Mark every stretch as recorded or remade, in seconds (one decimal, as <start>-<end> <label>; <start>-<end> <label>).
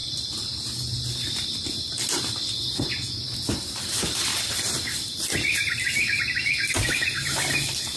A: 0.0-3.5 recorded; 3.5-4.3 remade; 4.3-6.2 recorded; 6.2-8.0 remade